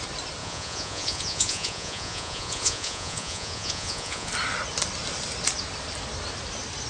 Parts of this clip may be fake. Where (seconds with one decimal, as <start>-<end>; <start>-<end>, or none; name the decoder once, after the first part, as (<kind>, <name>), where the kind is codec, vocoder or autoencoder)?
0.4-4.3 (vocoder, Vocos)